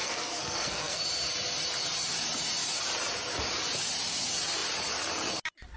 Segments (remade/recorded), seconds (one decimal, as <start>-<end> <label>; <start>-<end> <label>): 0.0-1.0 remade; 1.0-5.8 recorded